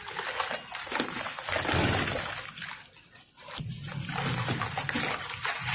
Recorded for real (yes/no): yes